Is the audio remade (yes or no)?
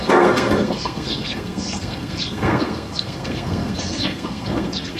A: yes